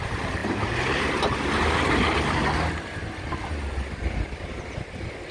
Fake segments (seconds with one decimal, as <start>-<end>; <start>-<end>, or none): none